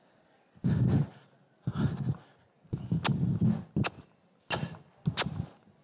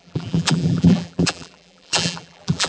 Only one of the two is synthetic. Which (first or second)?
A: second